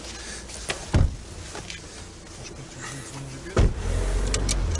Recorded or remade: recorded